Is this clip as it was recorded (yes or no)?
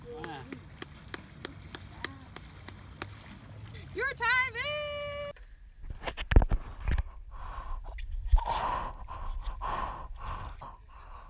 yes